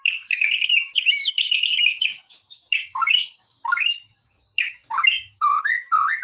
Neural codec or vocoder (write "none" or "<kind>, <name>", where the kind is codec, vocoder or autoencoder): codec, DAC